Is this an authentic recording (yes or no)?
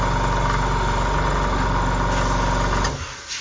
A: yes